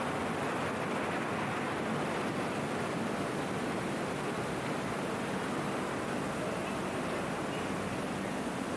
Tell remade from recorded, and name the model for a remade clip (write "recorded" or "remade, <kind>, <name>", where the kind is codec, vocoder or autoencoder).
recorded